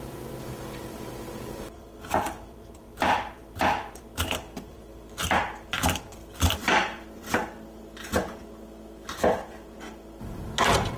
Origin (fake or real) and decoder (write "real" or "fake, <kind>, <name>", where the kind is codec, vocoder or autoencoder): fake, vocoder, BigVGAN v2